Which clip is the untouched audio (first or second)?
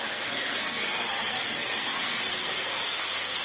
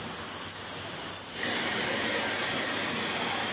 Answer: second